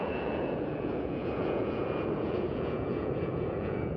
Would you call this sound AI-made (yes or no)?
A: yes